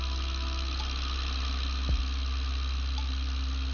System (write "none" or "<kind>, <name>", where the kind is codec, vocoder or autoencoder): none